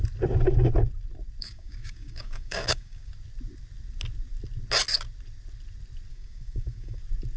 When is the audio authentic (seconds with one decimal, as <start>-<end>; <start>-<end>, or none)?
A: 0.0-1.4; 3.1-6.1; 7.0-7.4